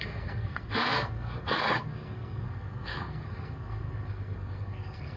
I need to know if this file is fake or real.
fake